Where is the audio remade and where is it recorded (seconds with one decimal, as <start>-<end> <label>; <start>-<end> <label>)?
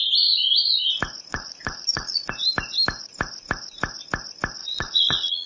0.0-1.3 recorded; 1.3-2.3 remade; 2.3-4.6 recorded; 4.6-5.5 remade